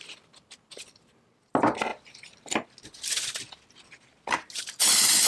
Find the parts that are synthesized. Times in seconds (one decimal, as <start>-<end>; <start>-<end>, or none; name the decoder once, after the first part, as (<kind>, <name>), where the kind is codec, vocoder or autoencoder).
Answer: none